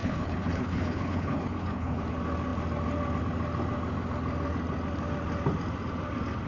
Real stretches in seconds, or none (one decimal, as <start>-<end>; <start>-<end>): 2.0-6.5